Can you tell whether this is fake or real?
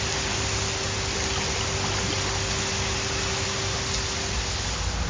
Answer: real